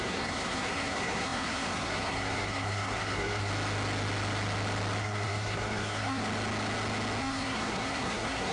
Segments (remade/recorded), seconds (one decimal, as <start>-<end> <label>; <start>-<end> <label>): 0.0-3.5 remade; 3.5-5.0 recorded; 5.0-6.2 remade; 6.2-7.2 recorded; 7.2-8.5 remade